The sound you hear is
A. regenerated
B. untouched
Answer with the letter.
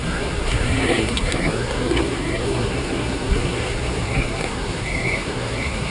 A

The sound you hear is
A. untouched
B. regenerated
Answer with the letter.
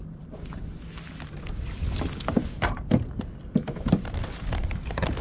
A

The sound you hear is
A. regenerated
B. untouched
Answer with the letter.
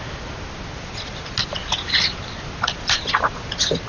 B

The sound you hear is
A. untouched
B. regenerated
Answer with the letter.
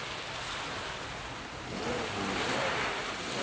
A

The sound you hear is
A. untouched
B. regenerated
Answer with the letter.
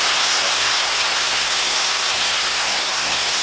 B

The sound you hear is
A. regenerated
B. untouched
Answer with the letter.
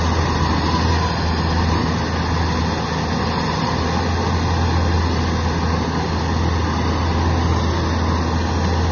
B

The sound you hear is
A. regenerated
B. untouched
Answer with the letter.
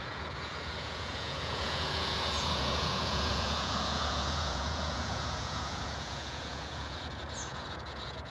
A